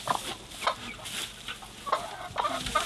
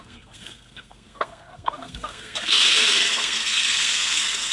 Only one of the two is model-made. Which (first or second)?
second